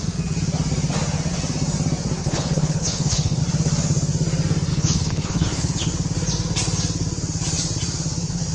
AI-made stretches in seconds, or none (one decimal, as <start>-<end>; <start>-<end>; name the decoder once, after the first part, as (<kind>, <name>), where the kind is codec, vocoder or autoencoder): 2.2-3.4 (codec, HILCodec); 4.7-5.9